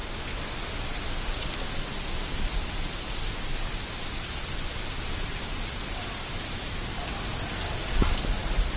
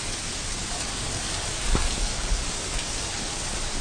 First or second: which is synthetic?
second